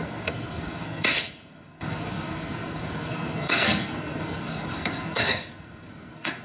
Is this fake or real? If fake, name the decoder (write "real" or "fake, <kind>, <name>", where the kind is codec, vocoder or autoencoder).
fake, codec, SNAC